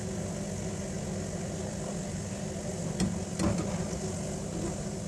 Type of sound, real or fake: real